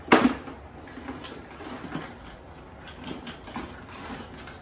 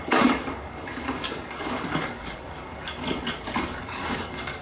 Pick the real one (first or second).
first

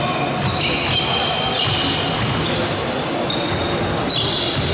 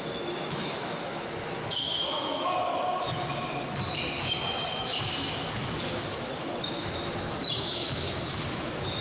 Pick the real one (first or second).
first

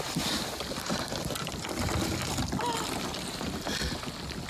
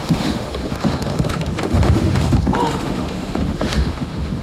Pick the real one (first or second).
first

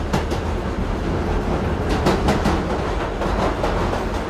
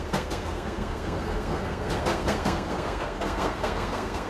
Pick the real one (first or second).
first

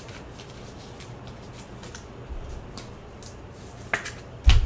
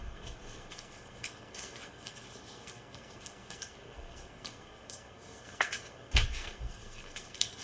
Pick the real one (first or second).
first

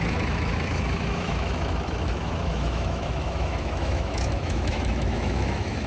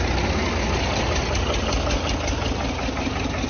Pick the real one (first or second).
second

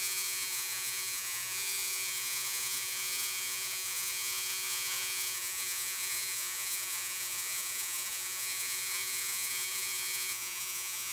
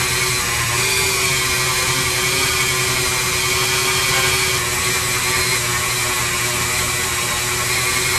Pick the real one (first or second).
second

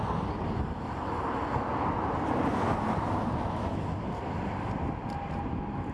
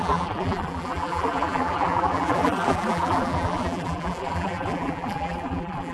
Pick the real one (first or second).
first